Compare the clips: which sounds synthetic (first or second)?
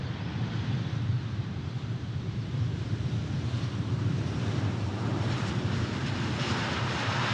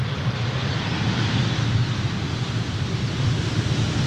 first